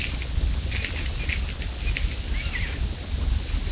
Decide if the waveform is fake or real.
real